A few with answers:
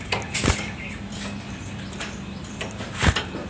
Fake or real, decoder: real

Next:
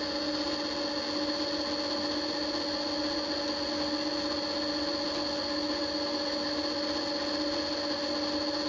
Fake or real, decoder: real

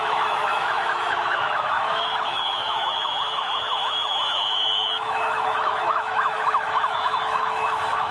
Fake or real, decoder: fake, autoencoder, DAC-VAE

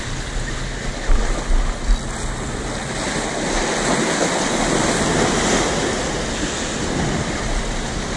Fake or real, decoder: real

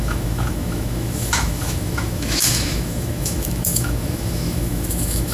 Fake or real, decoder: fake, autoencoder, DAC-VAE